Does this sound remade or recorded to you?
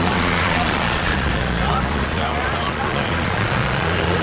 remade